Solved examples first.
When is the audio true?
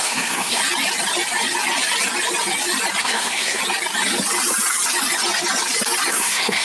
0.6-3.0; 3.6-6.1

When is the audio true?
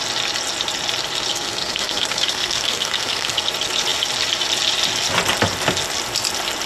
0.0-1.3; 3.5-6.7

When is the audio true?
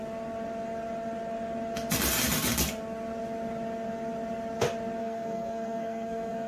0.0-5.0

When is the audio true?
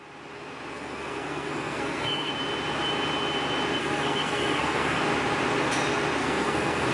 0.0-0.7; 2.3-3.8; 5.0-6.2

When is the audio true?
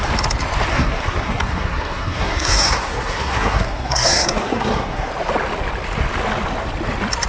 0.0-0.7; 5.1-7.3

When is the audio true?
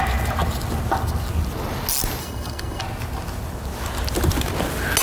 0.0-2.2; 2.8-5.0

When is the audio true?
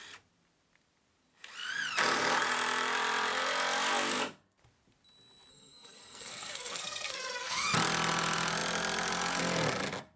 0.0-5.5; 7.7-10.2